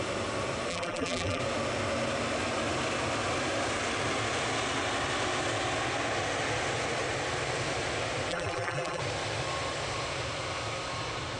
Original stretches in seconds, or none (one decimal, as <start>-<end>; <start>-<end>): 0.0-0.7; 1.4-8.3; 9.0-11.4